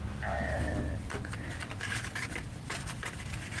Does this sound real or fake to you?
real